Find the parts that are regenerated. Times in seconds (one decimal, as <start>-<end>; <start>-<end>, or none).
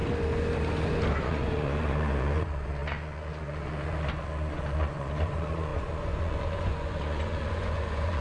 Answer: 1.2-8.2